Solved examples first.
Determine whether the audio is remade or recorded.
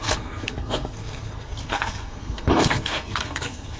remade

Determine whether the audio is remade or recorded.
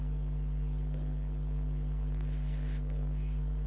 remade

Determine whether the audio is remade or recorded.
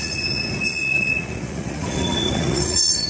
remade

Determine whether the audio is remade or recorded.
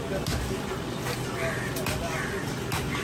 recorded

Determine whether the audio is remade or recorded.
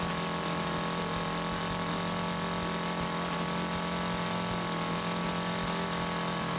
recorded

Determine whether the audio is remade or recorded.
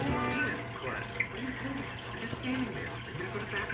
recorded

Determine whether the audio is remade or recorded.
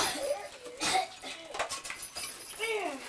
recorded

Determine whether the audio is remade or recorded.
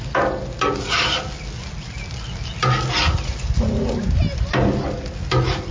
recorded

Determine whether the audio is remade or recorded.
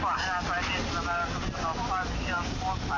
recorded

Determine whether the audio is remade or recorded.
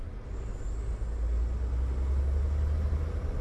recorded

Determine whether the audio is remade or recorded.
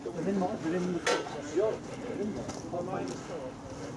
recorded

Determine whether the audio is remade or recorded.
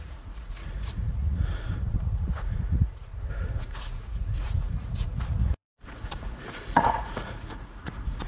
remade